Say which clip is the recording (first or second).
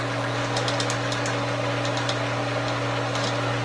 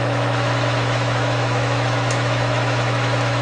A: first